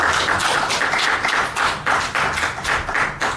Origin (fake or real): real